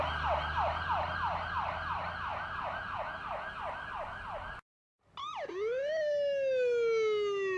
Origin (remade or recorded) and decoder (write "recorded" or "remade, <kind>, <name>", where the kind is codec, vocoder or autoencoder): recorded